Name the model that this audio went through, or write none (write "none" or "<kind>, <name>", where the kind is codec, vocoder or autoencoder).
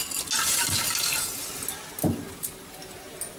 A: none